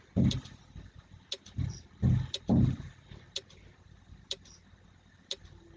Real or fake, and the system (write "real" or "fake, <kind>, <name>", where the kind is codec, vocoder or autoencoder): real